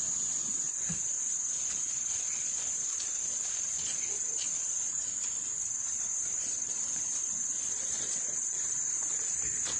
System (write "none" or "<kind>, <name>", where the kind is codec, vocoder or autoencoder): vocoder, Vocos